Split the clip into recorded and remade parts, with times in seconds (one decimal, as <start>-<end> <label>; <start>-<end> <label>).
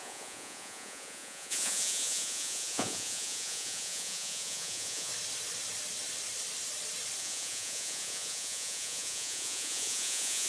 0.0-5.1 remade; 5.1-7.2 recorded; 7.2-10.5 remade